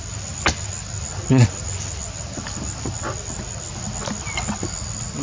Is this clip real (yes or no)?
yes